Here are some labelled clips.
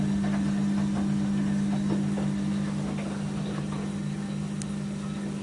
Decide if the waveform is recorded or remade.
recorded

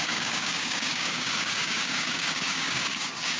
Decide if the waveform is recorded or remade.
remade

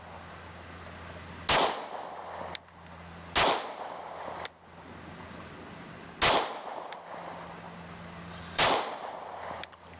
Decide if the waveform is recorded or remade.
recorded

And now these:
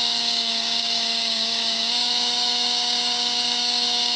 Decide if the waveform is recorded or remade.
remade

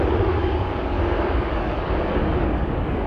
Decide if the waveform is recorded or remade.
remade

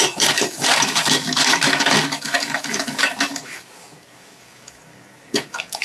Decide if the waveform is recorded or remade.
remade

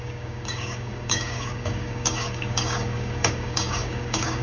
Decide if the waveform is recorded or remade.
remade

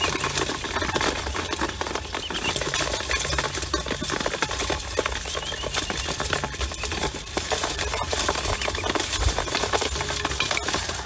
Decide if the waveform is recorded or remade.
recorded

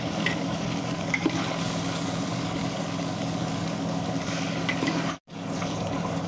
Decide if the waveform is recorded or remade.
remade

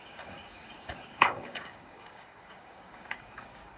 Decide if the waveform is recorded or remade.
remade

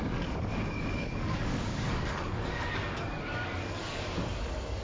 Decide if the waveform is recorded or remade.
remade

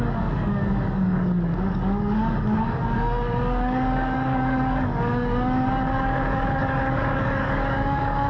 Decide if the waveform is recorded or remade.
remade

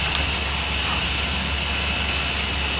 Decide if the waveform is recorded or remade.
recorded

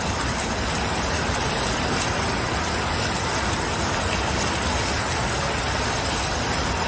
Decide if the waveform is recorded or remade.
recorded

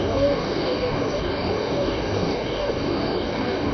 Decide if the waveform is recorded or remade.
remade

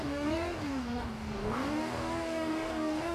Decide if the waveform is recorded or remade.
remade